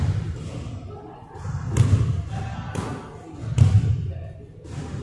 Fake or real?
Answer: real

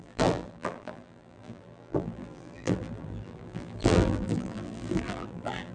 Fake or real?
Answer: fake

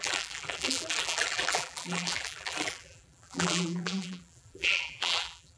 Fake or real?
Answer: fake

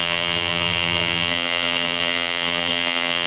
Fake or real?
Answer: fake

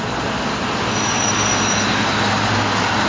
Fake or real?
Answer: real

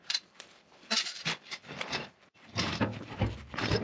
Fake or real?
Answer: fake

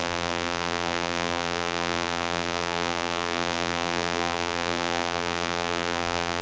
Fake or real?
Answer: fake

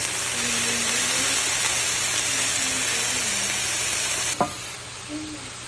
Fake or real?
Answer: real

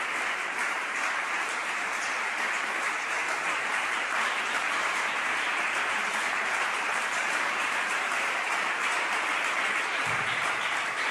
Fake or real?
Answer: fake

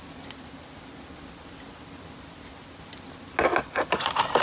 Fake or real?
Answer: real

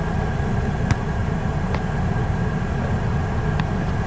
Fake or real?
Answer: real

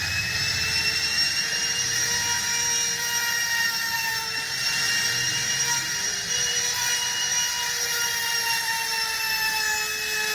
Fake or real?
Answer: fake